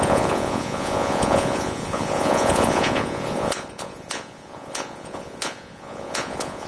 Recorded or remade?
remade